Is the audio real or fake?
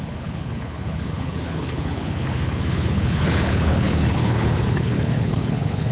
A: fake